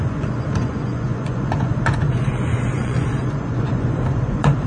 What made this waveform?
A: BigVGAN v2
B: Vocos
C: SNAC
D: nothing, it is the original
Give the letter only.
B